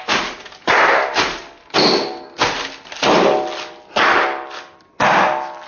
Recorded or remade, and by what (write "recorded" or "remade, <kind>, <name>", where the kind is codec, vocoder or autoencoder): recorded